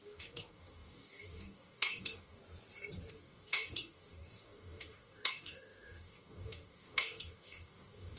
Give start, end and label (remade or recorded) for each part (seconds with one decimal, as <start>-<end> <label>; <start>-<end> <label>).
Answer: 0.0-2.4 remade; 2.4-3.1 recorded; 3.1-8.2 remade